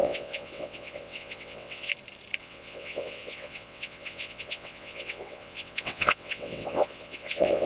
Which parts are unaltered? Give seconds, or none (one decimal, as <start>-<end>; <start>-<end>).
1.9-2.4